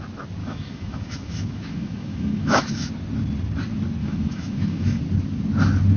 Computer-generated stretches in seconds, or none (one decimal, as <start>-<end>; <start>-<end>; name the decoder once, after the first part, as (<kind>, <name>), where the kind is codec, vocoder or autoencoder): 0.4-2.9 (autoencoder, DAC-VAE); 4.0-5.0

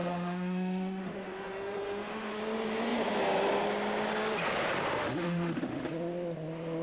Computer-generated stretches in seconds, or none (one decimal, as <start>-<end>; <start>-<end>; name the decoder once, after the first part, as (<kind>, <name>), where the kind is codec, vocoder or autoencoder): 0.0-2.4 (autoencoder, DAC-VAE); 5.0-5.9